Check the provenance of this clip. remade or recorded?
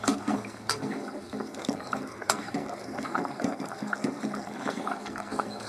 remade